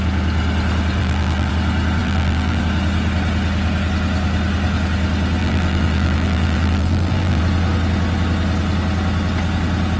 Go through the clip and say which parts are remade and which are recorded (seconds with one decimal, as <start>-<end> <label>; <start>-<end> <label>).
0.0-1.0 recorded; 1.0-1.5 remade; 1.5-2.0 recorded; 2.0-2.6 remade; 2.6-5.4 recorded; 5.4-7.4 remade; 7.4-10.0 recorded